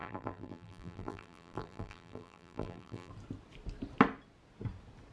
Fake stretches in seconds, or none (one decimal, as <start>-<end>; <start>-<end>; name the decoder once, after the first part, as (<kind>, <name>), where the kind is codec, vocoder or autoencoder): 0.0-3.1 (vocoder, BigVGAN v2)